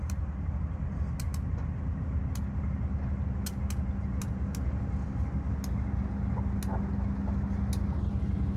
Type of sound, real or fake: real